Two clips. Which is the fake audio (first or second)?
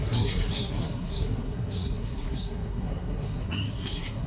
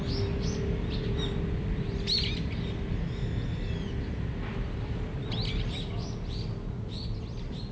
first